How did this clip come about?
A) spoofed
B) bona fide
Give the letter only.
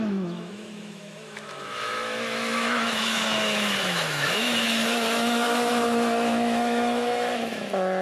A